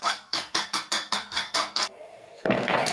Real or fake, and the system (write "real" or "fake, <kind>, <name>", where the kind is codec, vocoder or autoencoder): fake, codec, SNAC